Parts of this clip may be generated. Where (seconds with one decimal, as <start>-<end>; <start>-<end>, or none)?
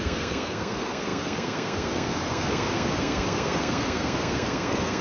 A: 0.0-5.0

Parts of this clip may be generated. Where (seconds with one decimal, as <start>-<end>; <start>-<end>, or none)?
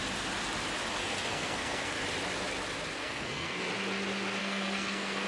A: 1.0-2.0; 3.0-3.7; 4.4-5.3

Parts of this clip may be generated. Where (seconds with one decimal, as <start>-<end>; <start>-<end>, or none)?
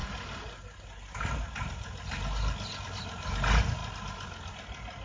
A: none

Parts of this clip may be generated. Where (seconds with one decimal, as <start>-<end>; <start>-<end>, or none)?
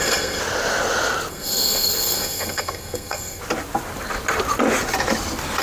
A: 0.0-0.4; 1.3-3.4